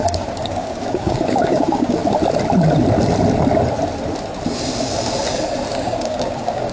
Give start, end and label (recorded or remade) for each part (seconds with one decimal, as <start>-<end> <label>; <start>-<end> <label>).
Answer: 0.0-2.0 remade; 2.0-5.7 recorded; 5.7-6.7 remade